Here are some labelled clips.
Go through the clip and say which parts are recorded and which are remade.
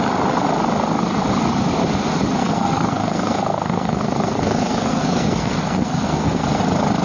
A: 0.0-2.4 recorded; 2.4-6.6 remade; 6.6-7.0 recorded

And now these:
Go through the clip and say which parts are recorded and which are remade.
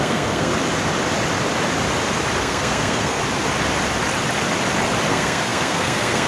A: 0.0-0.5 remade; 0.5-2.4 recorded; 2.4-3.2 remade; 3.2-5.1 recorded; 5.1-6.3 remade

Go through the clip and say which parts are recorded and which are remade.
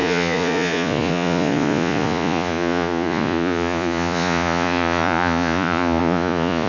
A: 0.0-6.7 remade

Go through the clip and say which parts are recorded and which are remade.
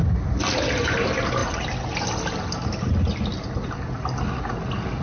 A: 0.0-5.0 recorded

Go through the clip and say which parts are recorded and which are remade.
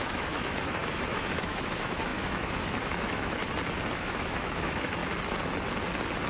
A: 0.0-3.4 remade; 3.4-3.9 recorded; 3.9-5.0 remade; 5.0-6.3 recorded